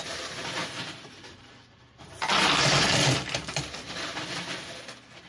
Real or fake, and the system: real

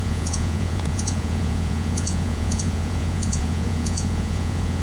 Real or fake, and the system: fake, vocoder, Vocos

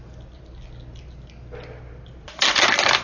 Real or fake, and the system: real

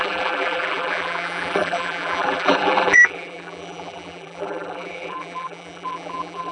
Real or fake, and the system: fake, vocoder, BigVGAN v2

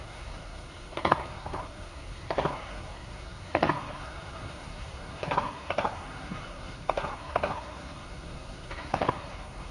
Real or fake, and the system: fake, codec, SNAC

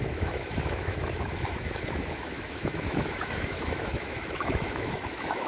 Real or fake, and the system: fake, autoencoder, DAC-VAE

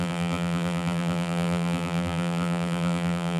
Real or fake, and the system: fake, vocoder, BigVGAN v2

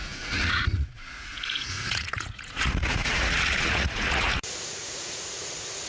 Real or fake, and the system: fake, vocoder, Vocos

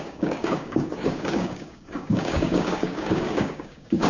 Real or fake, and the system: fake, codec, DAC